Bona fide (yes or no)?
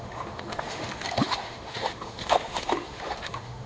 no